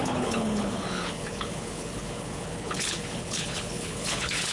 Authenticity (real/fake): fake